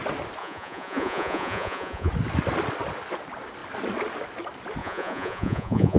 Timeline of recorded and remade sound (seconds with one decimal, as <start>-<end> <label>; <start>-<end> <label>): 0.0-0.4 recorded; 0.4-2.1 remade; 2.1-4.8 recorded; 4.8-6.0 remade